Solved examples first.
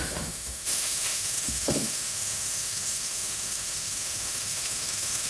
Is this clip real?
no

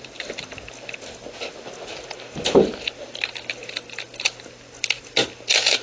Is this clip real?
yes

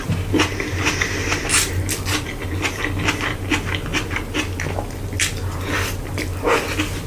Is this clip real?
yes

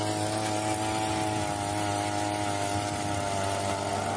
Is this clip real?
yes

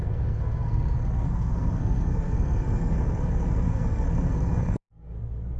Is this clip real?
no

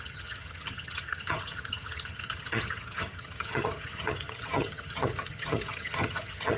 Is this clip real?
no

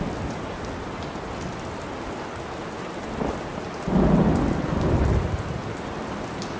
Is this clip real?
yes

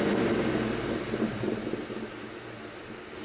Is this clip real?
yes